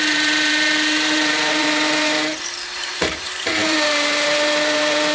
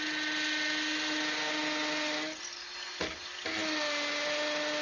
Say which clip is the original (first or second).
second